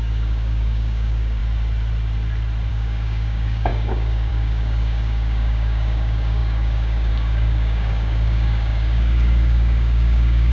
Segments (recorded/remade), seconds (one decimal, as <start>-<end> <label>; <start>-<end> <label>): 0.0-1.4 remade; 1.4-2.7 recorded; 2.7-10.5 remade